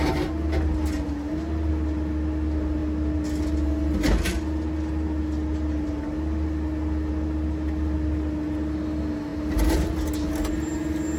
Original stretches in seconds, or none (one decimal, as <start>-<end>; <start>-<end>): 0.0-11.2

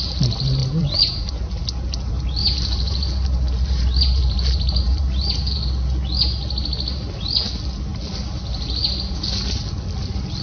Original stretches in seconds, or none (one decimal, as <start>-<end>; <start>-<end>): 0.0-0.6; 1.3-2.4; 5.6-10.4

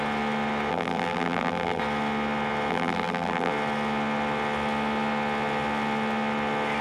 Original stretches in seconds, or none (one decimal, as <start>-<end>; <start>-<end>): 0.0-0.7; 1.8-2.7; 3.5-6.8

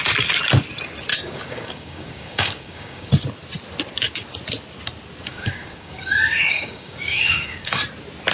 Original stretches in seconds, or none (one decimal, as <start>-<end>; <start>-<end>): 0.0-1.1; 3.1-5.3; 7.8-8.3

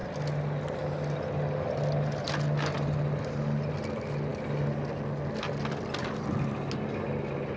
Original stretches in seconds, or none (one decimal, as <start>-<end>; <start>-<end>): 0.0-7.6

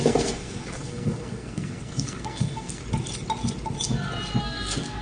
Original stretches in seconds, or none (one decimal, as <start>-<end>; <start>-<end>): 2.8-4.4